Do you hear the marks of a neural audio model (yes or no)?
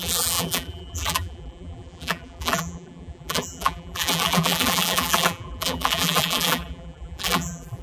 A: yes